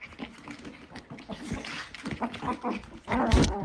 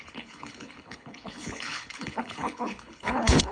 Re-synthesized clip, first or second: second